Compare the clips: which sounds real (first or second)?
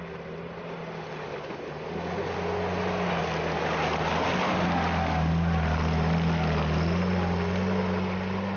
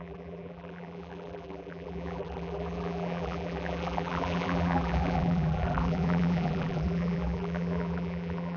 first